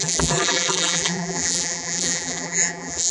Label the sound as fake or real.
fake